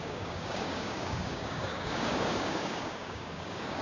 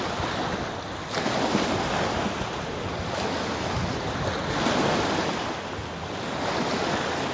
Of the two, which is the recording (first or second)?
second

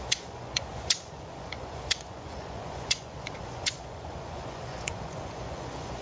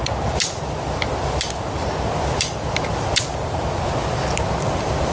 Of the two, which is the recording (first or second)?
second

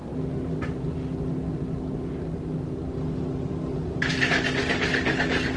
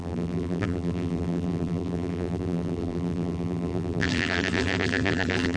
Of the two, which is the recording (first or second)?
first